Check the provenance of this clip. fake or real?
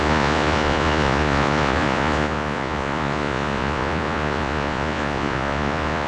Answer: fake